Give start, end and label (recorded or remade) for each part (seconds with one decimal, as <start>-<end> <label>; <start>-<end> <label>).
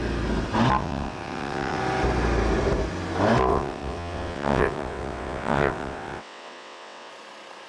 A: 0.0-0.8 recorded; 0.8-1.8 remade; 1.8-3.5 recorded; 3.5-7.1 remade; 7.1-7.7 recorded